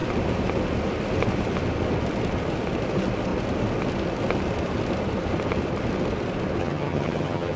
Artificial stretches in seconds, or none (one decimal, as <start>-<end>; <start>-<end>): 6.6-7.6